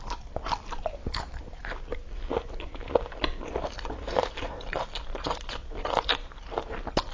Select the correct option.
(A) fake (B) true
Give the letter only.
B